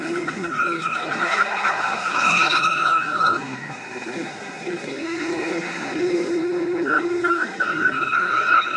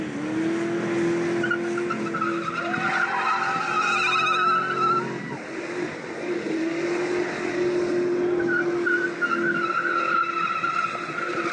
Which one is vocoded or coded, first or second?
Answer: first